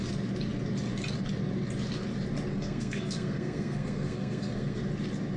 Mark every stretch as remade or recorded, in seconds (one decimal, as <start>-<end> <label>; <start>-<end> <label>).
0.0-2.5 recorded; 2.5-4.8 remade; 4.8-5.4 recorded